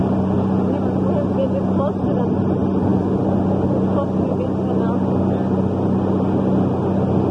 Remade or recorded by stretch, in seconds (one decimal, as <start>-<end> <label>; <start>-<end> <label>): 0.0-7.3 recorded